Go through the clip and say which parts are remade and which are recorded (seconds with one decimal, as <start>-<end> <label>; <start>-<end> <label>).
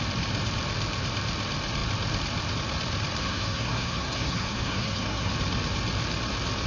0.0-3.2 recorded; 3.2-5.3 remade; 5.3-6.7 recorded